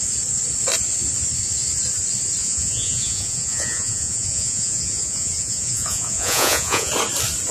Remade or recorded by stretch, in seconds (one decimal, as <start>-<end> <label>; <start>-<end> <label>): 0.0-2.4 recorded; 2.4-6.9 remade; 6.9-7.5 recorded